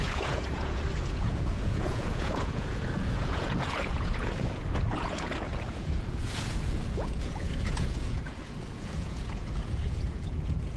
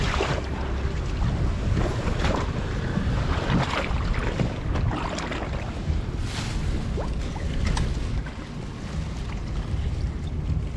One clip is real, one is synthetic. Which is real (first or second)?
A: second